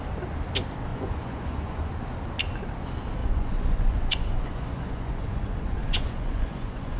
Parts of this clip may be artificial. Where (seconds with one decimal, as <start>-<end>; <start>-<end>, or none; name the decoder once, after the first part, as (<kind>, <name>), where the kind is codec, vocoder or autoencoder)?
0.9-1.9 (vocoder, Vocos); 3.2-7.0